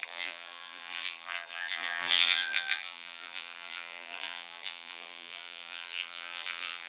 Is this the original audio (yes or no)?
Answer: no